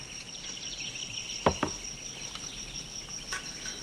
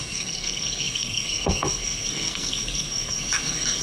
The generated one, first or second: second